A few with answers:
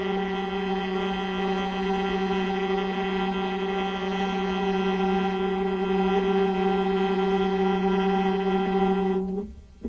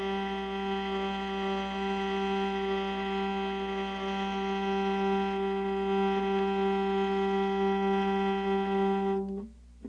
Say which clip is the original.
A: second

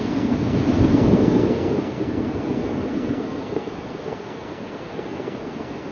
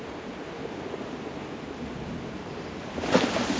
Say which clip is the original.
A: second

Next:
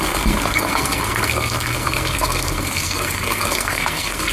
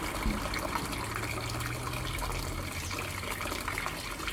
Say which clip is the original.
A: second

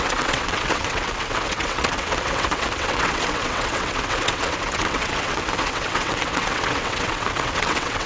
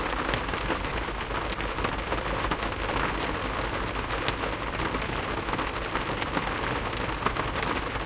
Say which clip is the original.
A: second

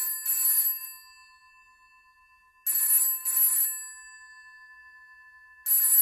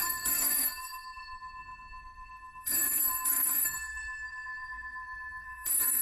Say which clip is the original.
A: first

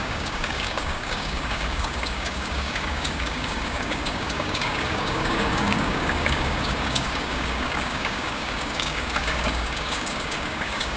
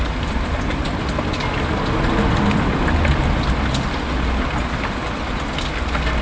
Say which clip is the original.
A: second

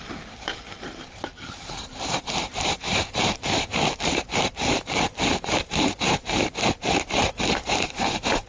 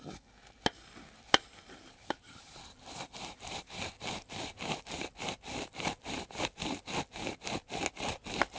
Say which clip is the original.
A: second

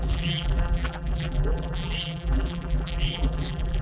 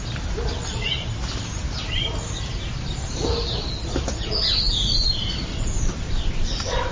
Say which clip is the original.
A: second